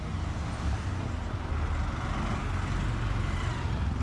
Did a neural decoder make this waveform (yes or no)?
no